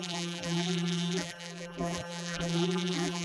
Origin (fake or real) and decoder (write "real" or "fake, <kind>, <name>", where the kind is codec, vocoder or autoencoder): fake, vocoder, BigVGAN v2